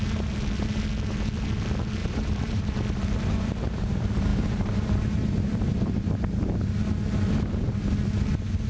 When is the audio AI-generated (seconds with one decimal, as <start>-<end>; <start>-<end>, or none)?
2.0-2.6; 4.3-6.1